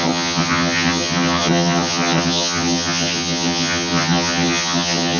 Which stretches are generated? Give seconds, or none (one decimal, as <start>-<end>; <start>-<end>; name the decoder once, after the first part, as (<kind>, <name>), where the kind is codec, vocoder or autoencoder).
0.0-5.2 (vocoder, HiFi-GAN)